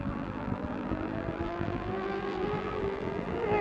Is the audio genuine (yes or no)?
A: no